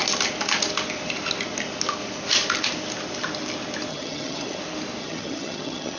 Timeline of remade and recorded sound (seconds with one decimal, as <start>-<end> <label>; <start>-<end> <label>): 0.0-3.9 recorded; 3.9-4.6 remade; 4.6-5.0 recorded; 5.0-6.0 remade